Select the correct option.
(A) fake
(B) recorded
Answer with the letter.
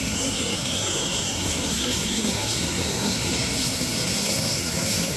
A